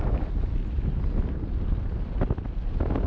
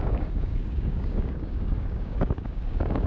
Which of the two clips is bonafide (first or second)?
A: first